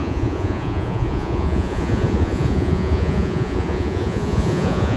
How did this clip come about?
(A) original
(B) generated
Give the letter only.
B